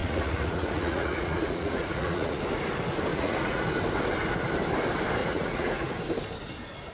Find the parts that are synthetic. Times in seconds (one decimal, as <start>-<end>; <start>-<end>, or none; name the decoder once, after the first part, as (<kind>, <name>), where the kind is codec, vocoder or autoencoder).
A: 0.0-2.4 (vocoder, Vocos); 3.1-3.6; 5.2-5.9